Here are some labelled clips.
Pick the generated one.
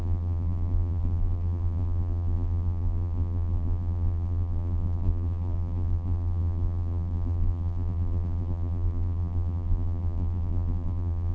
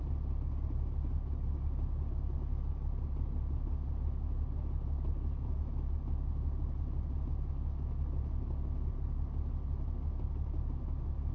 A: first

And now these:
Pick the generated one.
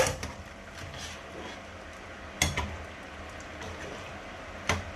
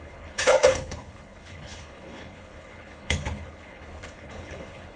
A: second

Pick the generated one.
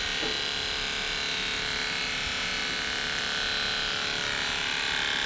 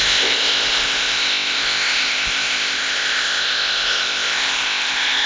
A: second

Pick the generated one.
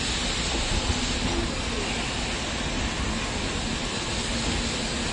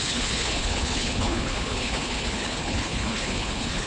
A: second